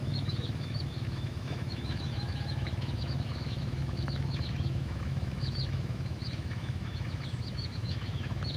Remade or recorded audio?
remade